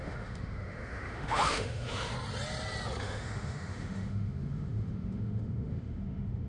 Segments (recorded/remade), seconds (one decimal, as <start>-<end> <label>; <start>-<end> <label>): 0.0-2.1 remade; 2.1-3.0 recorded; 3.0-6.5 remade